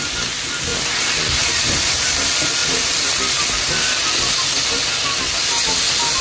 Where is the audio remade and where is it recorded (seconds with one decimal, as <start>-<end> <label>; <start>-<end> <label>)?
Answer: 0.0-6.2 recorded